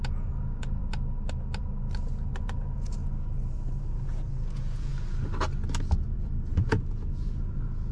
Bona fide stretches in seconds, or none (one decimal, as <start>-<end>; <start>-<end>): 0.8-2.4; 3.0-3.8; 4.9-6.5